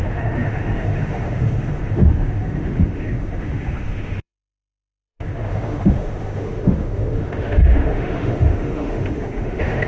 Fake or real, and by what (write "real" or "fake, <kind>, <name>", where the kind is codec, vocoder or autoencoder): fake, autoencoder, DAC-VAE